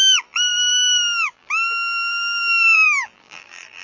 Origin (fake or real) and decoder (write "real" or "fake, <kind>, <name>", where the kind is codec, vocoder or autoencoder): fake, vocoder, BigVGAN v2